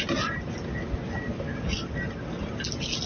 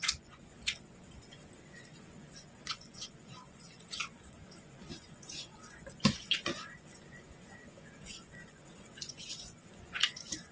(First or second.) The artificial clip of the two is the second